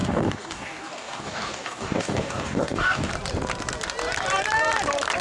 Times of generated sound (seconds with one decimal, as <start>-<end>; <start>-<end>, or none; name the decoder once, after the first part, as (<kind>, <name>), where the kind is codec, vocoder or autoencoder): 0.0-3.1 (codec, DAC)